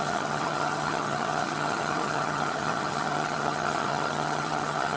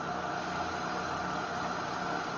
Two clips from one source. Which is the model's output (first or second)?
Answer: first